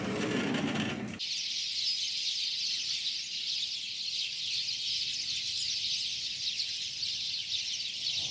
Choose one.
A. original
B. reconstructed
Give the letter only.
A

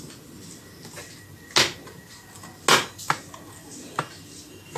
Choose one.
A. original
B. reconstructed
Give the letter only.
A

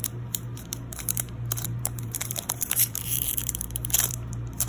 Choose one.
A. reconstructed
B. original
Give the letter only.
A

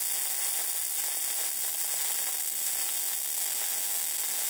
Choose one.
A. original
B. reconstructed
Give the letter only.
A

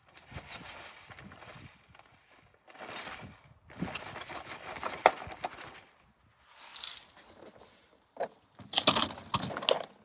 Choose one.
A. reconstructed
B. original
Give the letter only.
B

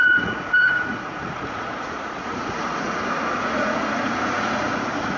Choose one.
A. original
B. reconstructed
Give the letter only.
B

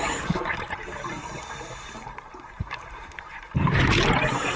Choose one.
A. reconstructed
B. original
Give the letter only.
A